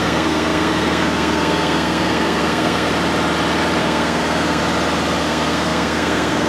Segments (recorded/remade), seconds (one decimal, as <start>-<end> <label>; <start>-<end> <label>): 0.0-2.9 remade; 2.9-3.8 recorded; 3.8-4.6 remade; 4.6-5.2 recorded; 5.2-6.5 remade